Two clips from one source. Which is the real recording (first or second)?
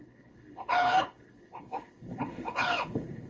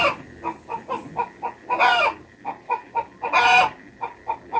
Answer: second